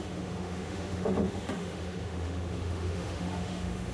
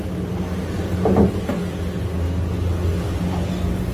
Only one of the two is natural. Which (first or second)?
second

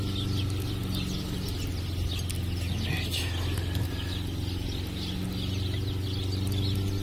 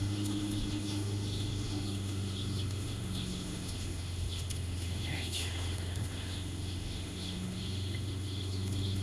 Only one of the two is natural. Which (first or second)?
first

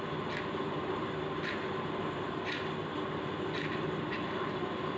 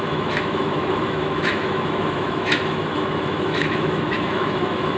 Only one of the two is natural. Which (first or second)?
first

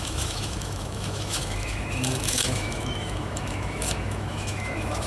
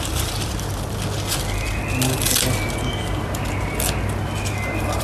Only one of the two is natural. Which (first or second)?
second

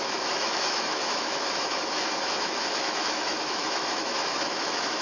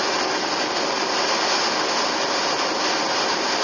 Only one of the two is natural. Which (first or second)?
second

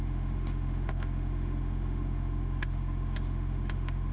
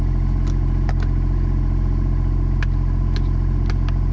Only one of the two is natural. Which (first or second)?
second